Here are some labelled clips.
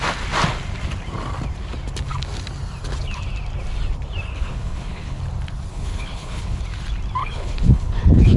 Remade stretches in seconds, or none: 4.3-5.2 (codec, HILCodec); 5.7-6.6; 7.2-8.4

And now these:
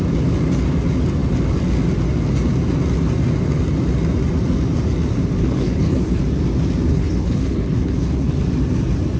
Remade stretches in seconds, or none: 5.4-6.2 (codec, HILCodec); 6.9-8.3